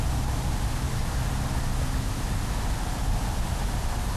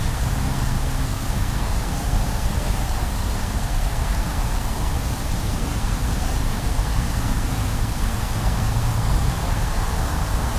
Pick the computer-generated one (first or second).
second